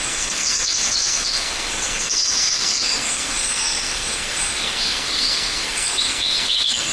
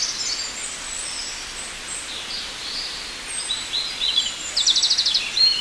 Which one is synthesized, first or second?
first